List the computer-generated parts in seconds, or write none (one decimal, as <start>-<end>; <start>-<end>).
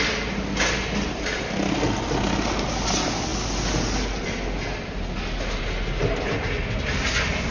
none